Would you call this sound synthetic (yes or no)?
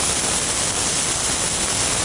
no